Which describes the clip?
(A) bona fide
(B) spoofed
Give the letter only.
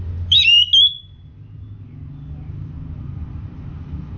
A